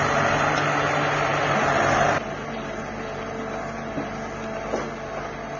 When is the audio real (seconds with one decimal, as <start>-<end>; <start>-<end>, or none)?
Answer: 0.0-5.6